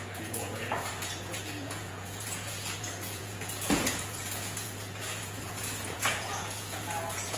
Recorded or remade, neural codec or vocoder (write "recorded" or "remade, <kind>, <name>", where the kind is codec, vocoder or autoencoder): remade, vocoder, Vocos